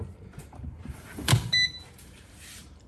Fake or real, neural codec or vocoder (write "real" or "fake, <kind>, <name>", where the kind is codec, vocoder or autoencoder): fake, vocoder, BigVGAN v2